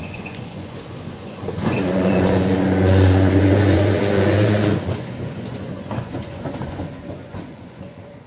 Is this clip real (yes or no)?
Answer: no